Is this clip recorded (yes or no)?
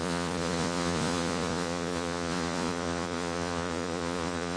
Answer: no